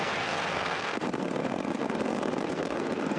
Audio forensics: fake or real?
fake